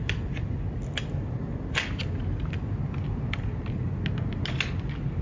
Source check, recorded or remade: recorded